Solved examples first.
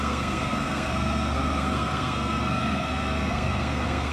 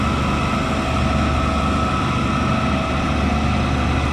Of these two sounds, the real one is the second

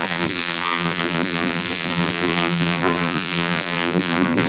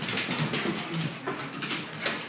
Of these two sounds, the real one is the second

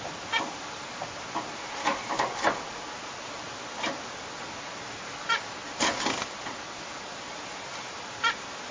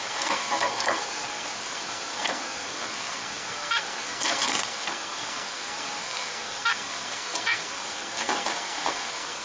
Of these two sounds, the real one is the first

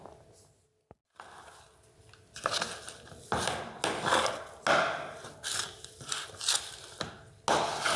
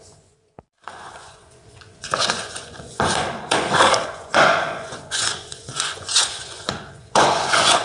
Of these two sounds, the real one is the first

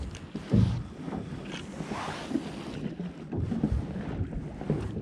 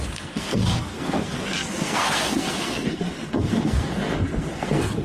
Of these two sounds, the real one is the first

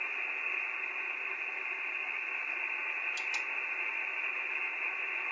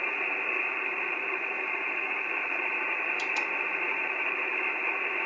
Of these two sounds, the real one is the first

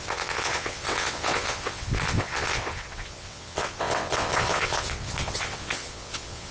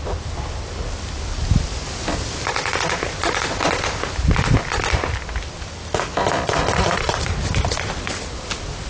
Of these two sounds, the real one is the second